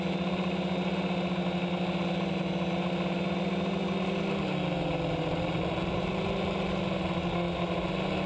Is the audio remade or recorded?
recorded